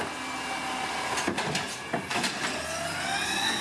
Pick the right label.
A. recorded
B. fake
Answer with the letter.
A